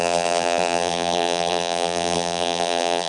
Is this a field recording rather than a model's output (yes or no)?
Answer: no